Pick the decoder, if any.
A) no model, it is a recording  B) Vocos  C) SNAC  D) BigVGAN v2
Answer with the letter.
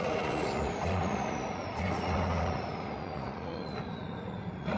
B